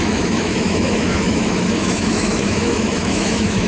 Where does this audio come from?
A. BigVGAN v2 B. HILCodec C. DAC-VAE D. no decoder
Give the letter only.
C